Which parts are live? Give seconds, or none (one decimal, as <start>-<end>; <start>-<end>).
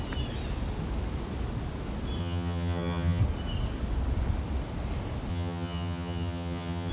0.0-2.2; 3.2-5.3